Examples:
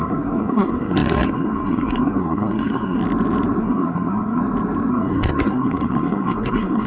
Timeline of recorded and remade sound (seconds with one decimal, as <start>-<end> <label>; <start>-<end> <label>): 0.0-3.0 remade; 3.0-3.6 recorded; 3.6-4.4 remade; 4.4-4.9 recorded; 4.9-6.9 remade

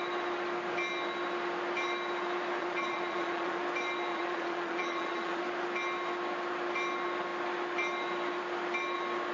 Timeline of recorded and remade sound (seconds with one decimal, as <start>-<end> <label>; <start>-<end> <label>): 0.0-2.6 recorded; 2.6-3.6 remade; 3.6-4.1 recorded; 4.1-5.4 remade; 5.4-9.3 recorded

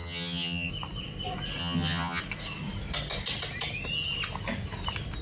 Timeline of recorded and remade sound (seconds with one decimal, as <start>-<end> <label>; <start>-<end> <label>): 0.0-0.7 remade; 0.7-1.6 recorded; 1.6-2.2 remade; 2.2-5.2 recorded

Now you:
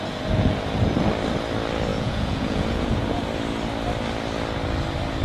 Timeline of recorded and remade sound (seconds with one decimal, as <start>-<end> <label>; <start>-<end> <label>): 0.0-1.9 recorded; 1.9-3.2 remade; 3.2-5.2 recorded

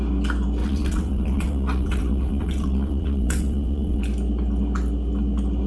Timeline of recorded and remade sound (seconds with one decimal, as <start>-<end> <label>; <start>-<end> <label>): 0.0-0.6 recorded; 0.6-4.0 remade; 4.0-5.7 recorded

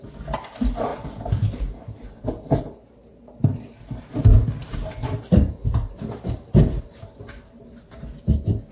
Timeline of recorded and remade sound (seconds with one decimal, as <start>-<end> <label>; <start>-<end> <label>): 0.0-0.9 recorded; 0.9-4.1 remade; 4.1-4.6 recorded; 4.6-7.7 remade; 7.7-8.7 recorded

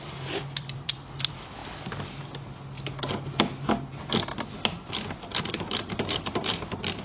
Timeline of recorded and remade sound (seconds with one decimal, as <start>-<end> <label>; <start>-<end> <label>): 0.0-1.6 remade; 1.6-5.4 recorded; 5.4-7.0 remade

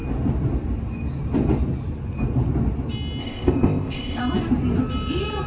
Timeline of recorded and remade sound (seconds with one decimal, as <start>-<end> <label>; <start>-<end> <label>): 0.0-3.2 recorded; 3.2-4.2 remade; 4.2-5.5 recorded